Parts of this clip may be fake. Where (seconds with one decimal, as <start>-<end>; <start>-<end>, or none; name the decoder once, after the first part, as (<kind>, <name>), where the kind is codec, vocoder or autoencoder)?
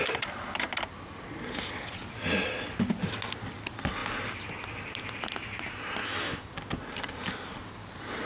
6.0-6.5 (autoencoder, DAC-VAE)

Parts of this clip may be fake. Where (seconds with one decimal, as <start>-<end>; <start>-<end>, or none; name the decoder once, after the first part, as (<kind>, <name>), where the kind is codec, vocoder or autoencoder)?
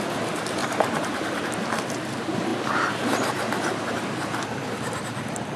none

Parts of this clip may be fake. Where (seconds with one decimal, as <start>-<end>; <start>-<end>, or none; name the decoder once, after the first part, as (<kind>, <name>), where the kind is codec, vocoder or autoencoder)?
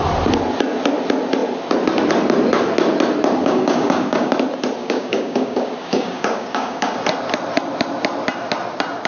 3.4-4.3 (codec, DAC); 4.8-6.9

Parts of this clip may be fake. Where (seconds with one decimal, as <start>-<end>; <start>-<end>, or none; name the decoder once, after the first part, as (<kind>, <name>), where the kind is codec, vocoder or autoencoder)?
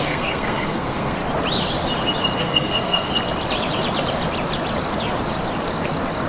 0.0-1.2 (codec, SNAC); 2.4-3.1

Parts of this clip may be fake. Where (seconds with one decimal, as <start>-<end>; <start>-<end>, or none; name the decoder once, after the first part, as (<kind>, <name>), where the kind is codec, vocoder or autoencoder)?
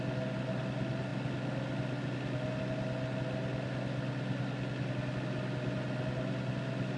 none